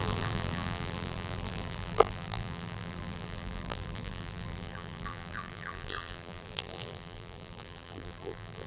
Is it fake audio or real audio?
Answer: fake